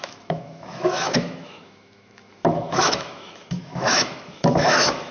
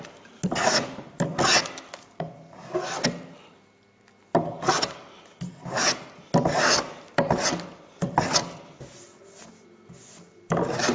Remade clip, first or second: first